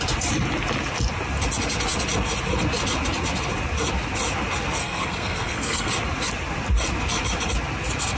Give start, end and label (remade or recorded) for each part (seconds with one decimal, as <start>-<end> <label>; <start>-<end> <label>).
0.0-4.8 recorded; 4.8-5.9 remade; 5.9-8.2 recorded